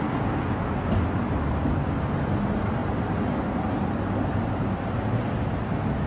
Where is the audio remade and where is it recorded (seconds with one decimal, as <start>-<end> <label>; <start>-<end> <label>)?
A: 0.0-2.8 recorded; 2.8-4.7 remade; 4.7-6.1 recorded